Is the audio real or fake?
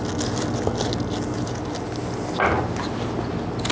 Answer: real